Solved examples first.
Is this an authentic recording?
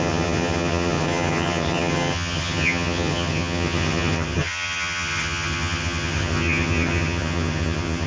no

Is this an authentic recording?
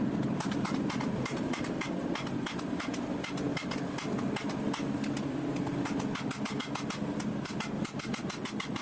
yes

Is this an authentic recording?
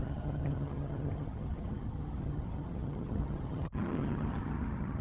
no